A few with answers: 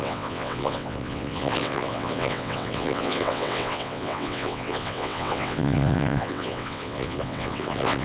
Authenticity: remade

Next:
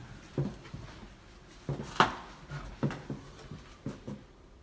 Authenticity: recorded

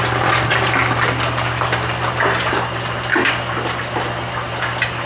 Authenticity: recorded